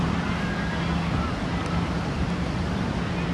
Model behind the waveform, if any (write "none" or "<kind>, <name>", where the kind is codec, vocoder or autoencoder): none